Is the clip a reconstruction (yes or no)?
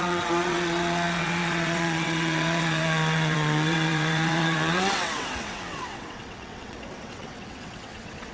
yes